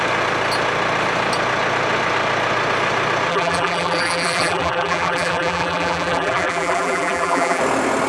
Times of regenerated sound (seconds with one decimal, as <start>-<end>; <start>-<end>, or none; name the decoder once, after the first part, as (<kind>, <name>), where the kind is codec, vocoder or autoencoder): 3.3-7.6 (vocoder, BigVGAN v2)